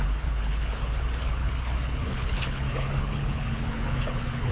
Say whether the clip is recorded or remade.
remade